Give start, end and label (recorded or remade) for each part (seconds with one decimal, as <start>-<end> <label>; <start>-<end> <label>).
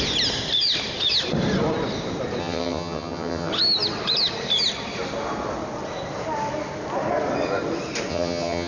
0.0-2.4 recorded; 2.4-3.5 remade; 3.5-8.1 recorded; 8.1-8.7 remade